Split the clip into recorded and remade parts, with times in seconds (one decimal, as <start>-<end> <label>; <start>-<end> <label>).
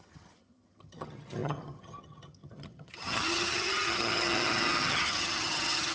0.0-5.9 remade